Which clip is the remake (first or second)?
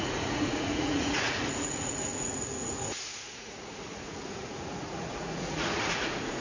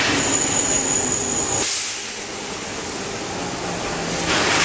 first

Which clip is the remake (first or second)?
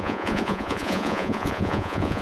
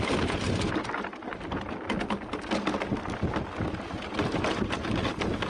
first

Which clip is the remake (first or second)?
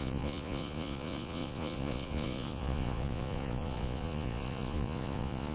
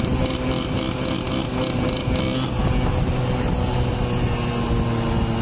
first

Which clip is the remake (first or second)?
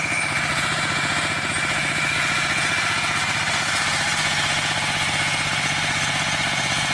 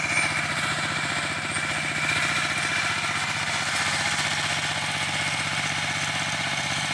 first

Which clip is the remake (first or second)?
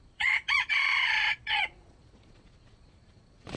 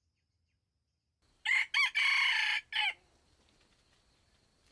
first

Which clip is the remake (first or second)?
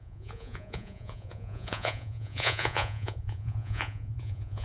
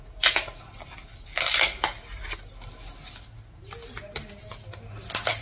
first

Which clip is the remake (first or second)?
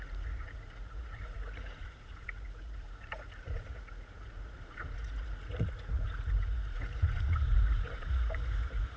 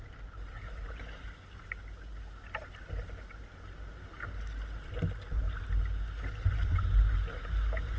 first